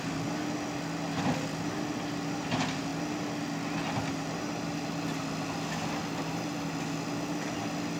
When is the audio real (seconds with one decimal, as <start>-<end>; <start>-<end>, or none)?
2.9-4.1